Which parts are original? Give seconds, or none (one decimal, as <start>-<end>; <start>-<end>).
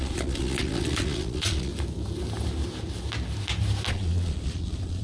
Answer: 1.7-3.9